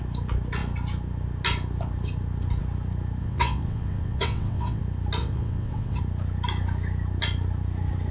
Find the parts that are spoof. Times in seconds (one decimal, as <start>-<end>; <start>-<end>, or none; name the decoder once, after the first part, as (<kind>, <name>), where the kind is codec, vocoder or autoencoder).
3.2-4.8 (vocoder, WaveNeXt); 5.2-6.0